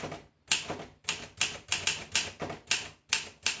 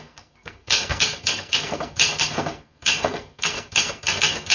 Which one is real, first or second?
first